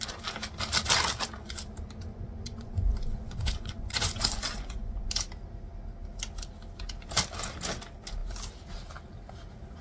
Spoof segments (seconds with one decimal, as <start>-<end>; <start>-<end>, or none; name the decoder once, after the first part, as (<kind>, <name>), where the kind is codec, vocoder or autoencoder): 2.1-5.1 (vocoder, Vocos)